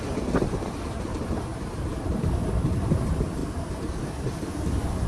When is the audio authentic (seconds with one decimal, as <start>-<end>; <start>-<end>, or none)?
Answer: 0.0-1.5; 2.3-3.4; 4.1-5.1